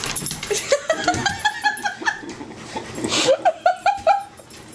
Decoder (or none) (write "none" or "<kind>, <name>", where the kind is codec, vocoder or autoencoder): none